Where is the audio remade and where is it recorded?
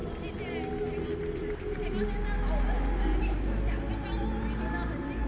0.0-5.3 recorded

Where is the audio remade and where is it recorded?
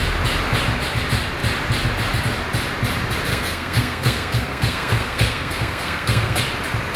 0.0-3.3 recorded; 3.3-6.4 remade; 6.4-7.0 recorded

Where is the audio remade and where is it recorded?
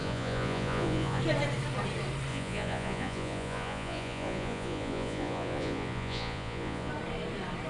0.0-1.2 remade; 1.2-2.3 recorded; 2.3-6.9 remade; 6.9-7.7 recorded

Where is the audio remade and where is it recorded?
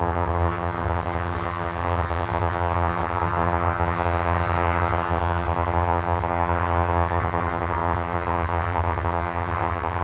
0.0-10.0 remade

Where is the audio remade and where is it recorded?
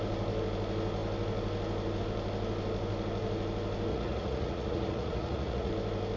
0.0-3.9 recorded; 3.9-5.7 remade; 5.7-6.2 recorded